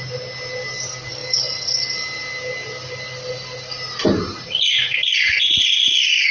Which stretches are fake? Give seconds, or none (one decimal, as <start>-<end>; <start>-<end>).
none